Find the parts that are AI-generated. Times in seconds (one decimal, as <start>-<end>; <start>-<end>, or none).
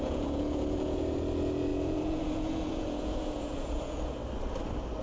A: 0.0-4.2